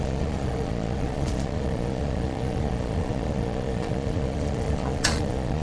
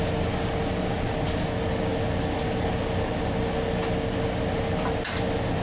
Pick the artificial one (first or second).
first